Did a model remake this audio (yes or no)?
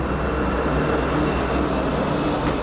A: no